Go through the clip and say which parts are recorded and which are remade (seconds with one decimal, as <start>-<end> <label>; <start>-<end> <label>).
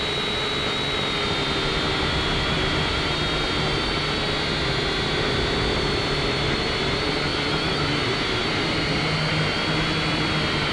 0.0-10.7 recorded